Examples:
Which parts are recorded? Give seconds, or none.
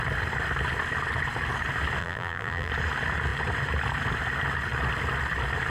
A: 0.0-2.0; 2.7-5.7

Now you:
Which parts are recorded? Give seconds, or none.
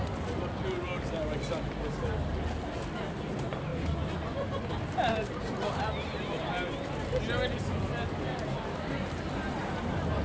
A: 0.0-10.2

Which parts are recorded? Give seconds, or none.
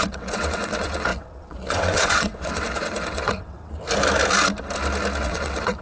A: 3.8-5.2